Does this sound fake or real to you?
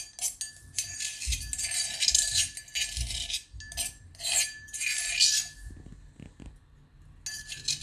real